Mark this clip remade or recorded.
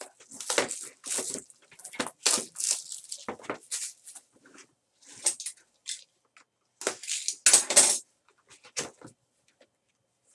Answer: recorded